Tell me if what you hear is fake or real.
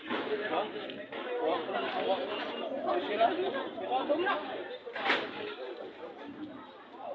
real